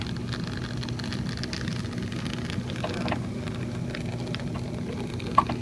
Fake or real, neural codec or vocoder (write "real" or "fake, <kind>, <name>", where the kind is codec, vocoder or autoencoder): real